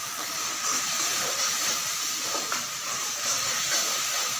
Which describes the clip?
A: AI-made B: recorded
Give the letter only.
A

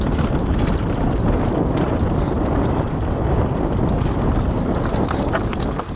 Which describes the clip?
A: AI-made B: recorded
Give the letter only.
B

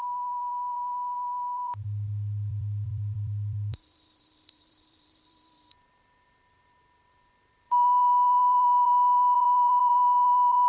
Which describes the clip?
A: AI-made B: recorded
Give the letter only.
A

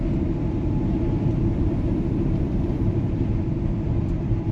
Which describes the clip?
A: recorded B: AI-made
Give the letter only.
B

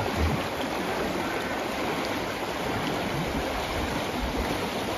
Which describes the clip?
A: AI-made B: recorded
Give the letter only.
B